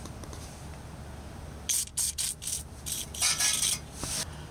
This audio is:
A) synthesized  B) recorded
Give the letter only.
B